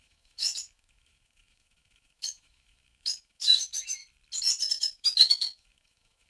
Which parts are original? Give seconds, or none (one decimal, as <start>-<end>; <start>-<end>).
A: 4.0-4.7

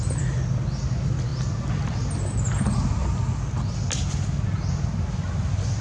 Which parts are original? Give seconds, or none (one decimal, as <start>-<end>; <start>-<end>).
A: 0.0-5.8